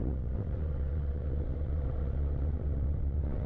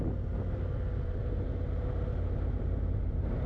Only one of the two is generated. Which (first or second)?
first